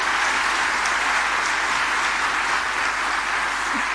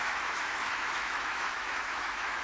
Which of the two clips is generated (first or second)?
second